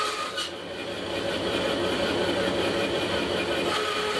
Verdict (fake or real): fake